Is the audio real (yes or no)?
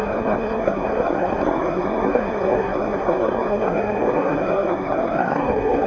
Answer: no